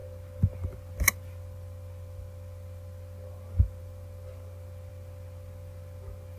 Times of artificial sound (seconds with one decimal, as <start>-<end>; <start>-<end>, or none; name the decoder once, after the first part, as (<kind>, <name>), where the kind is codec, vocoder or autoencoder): none